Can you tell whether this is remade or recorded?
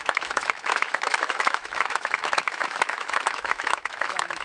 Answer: remade